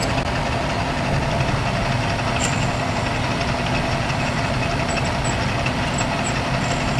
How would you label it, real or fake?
real